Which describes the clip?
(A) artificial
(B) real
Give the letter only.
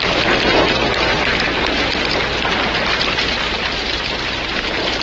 A